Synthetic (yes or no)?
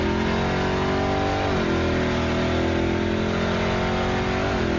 no